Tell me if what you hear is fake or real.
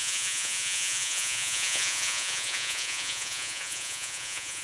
fake